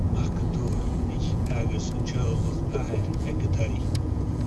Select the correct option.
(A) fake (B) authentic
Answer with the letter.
A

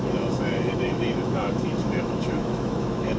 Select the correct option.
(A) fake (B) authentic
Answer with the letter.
A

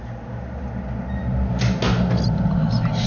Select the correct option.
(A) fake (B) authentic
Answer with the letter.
B